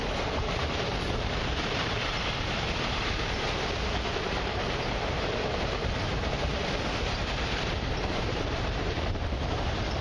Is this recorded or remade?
remade